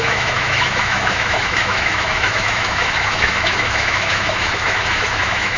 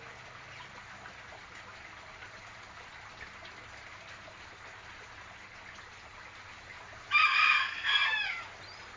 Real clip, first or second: second